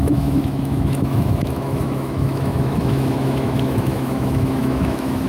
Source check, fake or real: fake